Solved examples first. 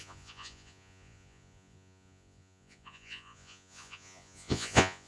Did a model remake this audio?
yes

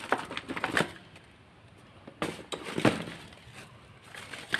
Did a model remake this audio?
no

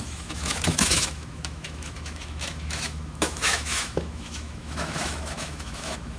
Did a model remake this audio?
yes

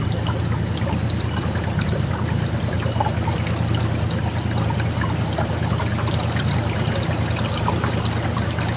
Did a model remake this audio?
no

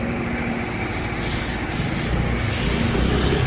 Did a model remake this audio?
no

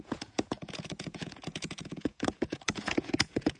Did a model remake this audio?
yes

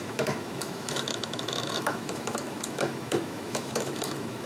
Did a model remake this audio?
yes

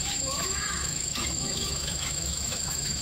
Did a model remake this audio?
yes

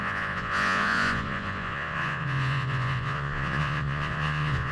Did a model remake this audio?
yes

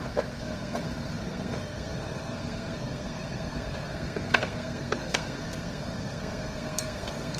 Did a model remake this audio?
yes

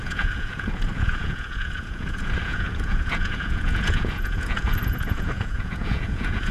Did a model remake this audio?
yes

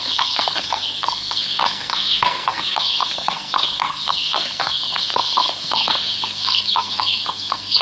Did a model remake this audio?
yes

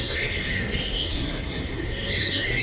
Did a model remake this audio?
yes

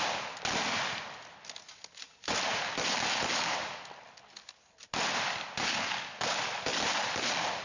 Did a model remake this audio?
no